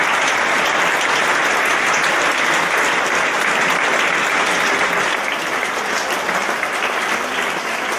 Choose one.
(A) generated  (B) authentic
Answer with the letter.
B